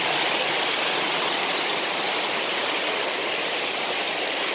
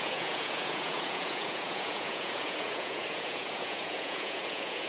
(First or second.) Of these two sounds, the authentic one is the first